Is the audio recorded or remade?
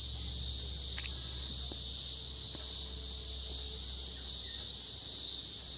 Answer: recorded